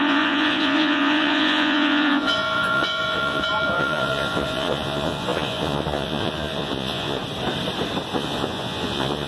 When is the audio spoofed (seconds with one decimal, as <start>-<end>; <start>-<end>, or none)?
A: 0.0-7.2; 8.1-9.3